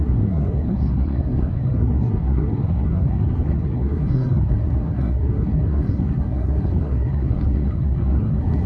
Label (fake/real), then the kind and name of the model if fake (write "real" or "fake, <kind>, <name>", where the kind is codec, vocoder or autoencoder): fake, codec, SNAC